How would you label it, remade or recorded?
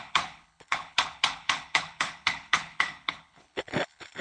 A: remade